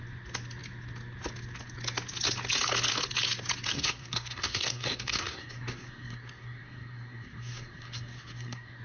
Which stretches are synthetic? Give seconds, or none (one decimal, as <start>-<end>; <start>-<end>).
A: 3.7-8.8